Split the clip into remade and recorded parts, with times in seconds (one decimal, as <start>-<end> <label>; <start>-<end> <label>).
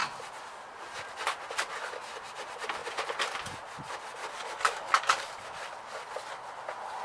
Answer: 0.0-4.2 recorded; 4.2-5.4 remade; 5.4-7.0 recorded